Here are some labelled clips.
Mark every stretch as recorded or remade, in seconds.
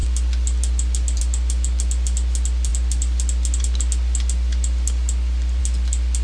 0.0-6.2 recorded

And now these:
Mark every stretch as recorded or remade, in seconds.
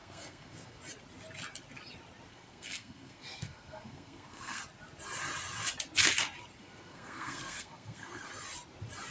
0.0-0.8 remade; 0.8-2.3 recorded; 2.3-4.6 remade; 4.6-6.6 recorded; 6.6-8.3 remade; 8.3-9.1 recorded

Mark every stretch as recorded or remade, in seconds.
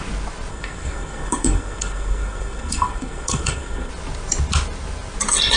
0.0-0.5 recorded; 0.5-3.9 remade; 3.9-5.6 recorded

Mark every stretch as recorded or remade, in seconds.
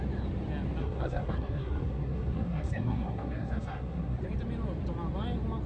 0.0-0.8 recorded; 0.8-4.2 remade; 4.2-5.7 recorded